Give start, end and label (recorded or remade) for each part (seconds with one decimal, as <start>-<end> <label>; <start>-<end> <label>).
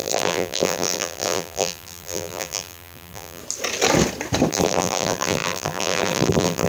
0.0-3.4 remade; 3.4-4.5 recorded; 4.5-6.7 remade